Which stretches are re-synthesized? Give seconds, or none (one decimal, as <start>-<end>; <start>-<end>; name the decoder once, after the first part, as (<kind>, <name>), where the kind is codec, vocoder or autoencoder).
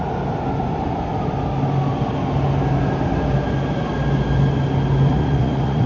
5.1-5.9 (vocoder, Vocos)